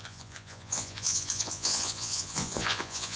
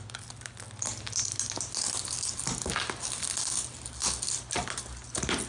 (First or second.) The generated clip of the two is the first